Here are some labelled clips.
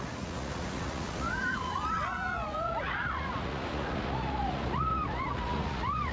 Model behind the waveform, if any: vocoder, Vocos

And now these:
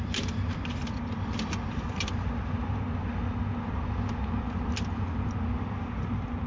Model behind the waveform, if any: none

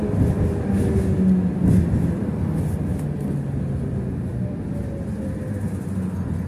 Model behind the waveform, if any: none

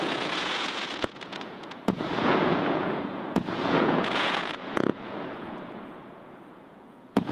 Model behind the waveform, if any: vocoder, Vocos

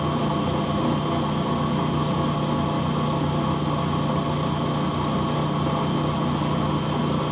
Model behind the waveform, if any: none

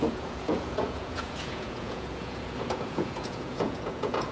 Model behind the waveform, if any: vocoder, Vocos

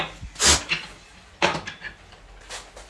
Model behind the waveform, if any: none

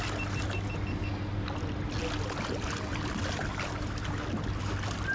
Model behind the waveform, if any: none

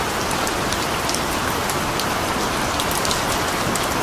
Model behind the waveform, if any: none